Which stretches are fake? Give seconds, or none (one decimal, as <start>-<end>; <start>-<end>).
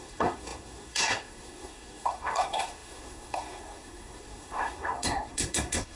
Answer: 0.0-6.0